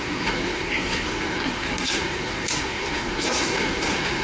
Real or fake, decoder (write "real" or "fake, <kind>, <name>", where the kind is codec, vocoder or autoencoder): fake, codec, SNAC